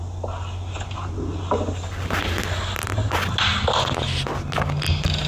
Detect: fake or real real